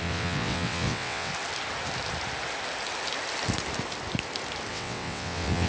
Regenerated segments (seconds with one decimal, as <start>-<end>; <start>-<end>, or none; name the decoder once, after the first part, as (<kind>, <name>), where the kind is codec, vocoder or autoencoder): 0.0-1.3 (vocoder, WaveNeXt); 4.7-5.7